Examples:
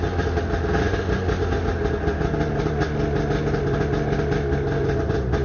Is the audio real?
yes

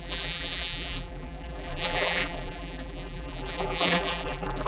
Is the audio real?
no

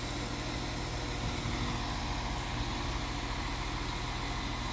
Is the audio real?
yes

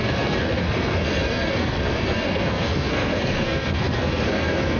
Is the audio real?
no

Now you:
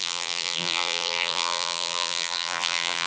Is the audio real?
no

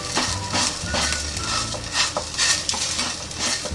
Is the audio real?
yes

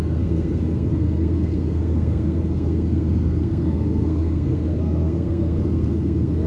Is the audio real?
no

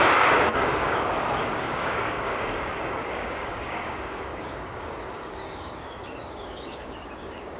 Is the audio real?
no